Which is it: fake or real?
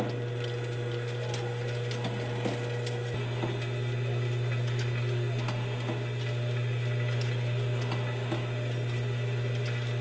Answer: real